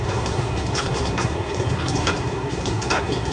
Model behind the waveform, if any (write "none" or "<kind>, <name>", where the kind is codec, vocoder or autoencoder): codec, SNAC